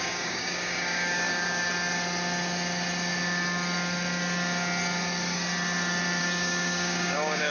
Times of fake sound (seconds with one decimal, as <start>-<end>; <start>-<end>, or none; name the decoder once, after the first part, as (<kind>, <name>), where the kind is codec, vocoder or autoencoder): 0.0-1.7 (codec, DAC); 6.2-7.5